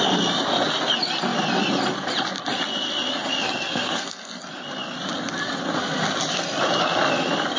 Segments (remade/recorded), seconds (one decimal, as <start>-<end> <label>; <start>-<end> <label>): 0.0-3.7 recorded; 3.7-4.4 remade; 4.4-7.6 recorded